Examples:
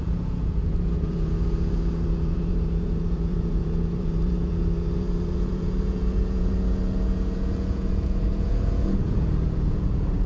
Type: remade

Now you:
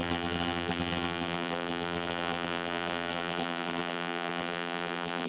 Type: remade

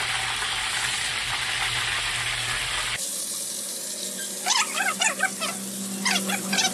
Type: recorded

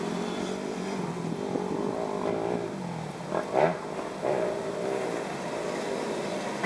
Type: recorded